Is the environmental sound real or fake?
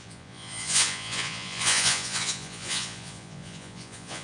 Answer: fake